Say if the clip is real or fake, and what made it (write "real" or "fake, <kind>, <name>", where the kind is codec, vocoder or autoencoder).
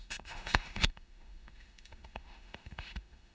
fake, autoencoder, DAC-VAE